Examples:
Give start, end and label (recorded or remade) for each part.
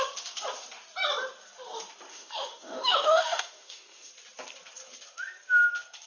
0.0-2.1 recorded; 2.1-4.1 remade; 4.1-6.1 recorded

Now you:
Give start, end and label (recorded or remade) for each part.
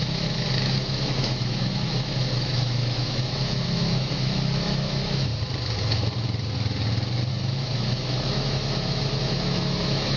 0.0-5.3 remade; 5.3-7.3 recorded; 7.3-10.2 remade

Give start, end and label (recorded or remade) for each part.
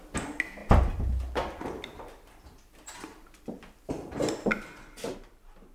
0.0-5.7 recorded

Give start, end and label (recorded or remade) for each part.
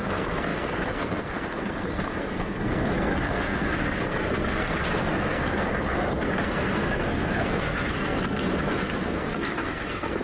0.0-10.2 remade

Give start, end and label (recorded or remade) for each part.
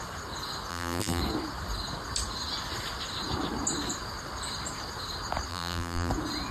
0.0-0.7 recorded; 0.7-1.2 remade; 1.2-5.5 recorded; 5.5-6.1 remade; 6.1-6.5 recorded